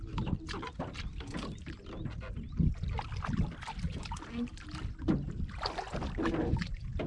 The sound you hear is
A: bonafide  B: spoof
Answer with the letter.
A